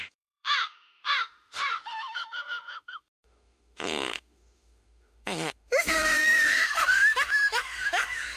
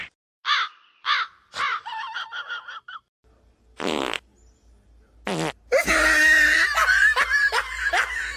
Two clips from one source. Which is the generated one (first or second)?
first